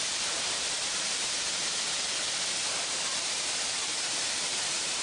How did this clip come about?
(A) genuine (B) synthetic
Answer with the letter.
B